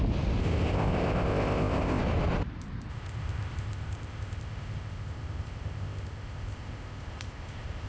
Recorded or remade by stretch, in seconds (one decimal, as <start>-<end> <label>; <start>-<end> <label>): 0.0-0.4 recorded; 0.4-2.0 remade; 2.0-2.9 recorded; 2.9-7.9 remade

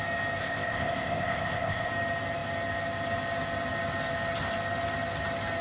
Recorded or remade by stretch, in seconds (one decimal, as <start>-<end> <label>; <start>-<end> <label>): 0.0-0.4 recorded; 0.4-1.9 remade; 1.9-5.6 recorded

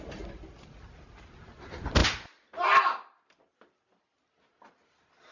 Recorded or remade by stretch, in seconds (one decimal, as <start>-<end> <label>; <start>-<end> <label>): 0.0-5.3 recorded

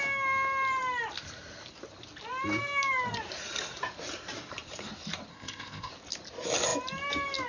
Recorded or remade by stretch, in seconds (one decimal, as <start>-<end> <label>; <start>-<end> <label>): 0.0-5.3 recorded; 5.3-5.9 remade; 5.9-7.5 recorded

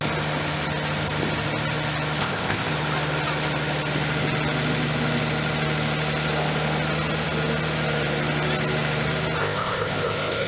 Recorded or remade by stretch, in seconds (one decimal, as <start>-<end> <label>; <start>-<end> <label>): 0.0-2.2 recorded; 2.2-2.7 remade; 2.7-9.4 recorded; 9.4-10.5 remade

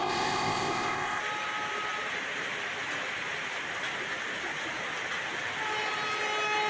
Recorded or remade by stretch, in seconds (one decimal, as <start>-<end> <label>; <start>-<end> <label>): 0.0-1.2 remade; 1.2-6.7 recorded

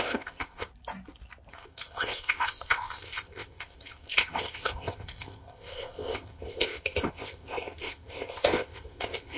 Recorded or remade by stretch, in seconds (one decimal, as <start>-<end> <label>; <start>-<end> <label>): 0.0-0.7 remade; 0.7-1.5 recorded; 1.5-9.4 remade